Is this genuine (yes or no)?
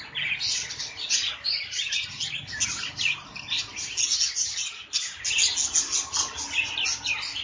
yes